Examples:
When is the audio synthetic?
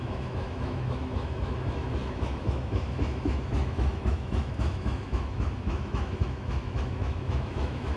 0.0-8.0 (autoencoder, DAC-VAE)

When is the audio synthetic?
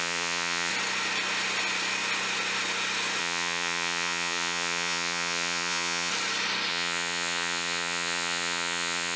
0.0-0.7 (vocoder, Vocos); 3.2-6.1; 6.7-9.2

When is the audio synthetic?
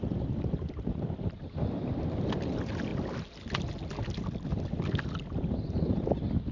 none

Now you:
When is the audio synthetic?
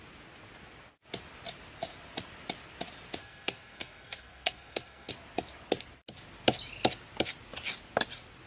3.2-5.1 (codec, SNAC)